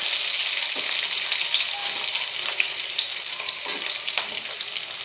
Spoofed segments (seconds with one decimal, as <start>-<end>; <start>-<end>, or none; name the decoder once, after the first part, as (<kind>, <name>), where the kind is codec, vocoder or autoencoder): 1.8-5.0 (vocoder, BigVGAN v2)